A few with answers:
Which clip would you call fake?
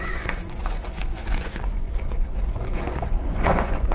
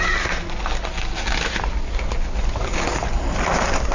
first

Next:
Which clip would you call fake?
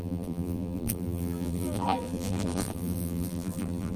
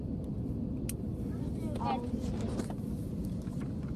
first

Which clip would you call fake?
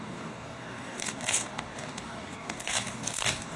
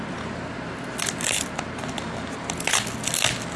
first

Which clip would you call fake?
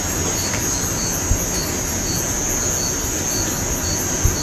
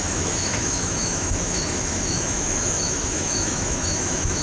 second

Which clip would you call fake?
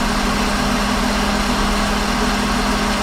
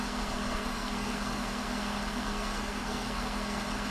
second